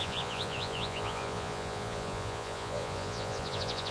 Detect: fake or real fake